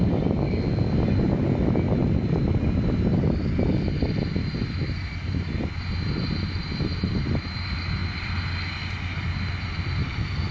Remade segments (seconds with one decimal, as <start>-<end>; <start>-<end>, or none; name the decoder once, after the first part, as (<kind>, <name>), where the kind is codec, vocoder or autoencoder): none